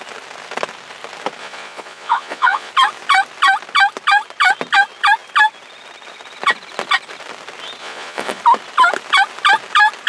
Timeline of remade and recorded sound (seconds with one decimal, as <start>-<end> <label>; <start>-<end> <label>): 0.0-1.4 recorded; 1.4-2.7 remade; 2.7-7.8 recorded; 7.8-8.4 remade; 8.4-10.1 recorded